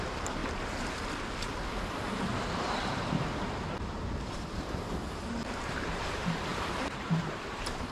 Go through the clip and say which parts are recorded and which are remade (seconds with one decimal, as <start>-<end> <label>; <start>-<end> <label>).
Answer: 0.0-0.4 remade; 0.4-2.6 recorded; 2.6-7.9 remade